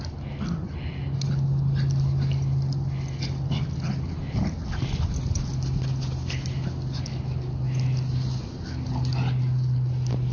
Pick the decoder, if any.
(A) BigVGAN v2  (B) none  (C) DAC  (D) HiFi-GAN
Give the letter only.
B